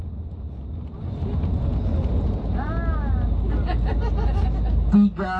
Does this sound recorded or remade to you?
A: recorded